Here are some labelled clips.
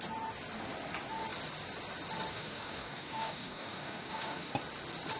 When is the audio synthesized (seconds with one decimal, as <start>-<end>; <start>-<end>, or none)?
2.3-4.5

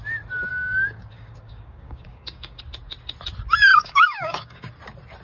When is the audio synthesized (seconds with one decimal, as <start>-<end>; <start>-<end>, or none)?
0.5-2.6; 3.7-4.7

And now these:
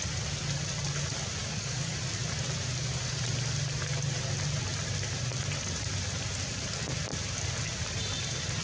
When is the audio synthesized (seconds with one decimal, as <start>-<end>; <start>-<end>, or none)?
1.4-1.9

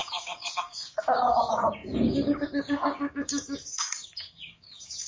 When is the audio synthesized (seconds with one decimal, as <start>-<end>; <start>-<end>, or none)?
0.0-5.1

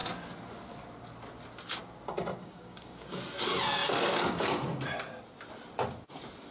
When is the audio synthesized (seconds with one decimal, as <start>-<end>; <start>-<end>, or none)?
2.4-3.2

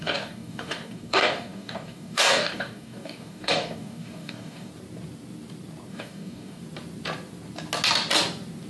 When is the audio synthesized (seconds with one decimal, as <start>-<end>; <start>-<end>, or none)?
0.0-4.7; 5.9-6.6

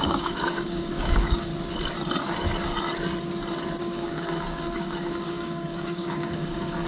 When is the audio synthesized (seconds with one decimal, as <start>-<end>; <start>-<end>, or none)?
0.0-1.5; 3.8-6.9